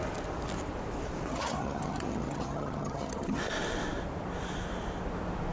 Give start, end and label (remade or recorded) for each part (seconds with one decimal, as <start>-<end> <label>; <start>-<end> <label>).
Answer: 0.0-1.3 recorded; 1.3-3.4 remade; 3.4-5.5 recorded